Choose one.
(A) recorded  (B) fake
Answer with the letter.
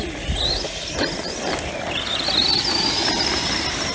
A